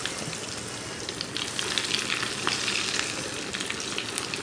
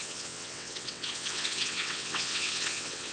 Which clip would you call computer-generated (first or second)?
second